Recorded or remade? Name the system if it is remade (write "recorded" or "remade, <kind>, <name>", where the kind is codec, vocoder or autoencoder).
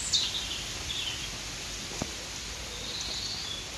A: recorded